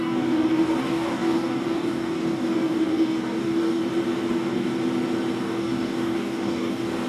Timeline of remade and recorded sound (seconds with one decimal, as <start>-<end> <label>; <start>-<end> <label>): 0.0-3.8 remade; 3.8-4.3 recorded; 4.3-4.7 remade; 4.7-5.4 recorded; 5.4-7.1 remade